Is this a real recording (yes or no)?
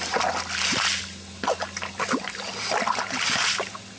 yes